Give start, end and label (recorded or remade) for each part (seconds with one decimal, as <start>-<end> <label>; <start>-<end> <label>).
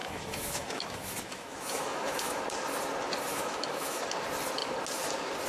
0.0-2.4 remade; 2.4-3.3 recorded; 3.3-4.0 remade; 4.0-5.5 recorded